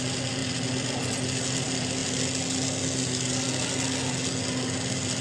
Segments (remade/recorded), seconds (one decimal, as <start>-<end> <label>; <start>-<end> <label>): 0.0-5.2 recorded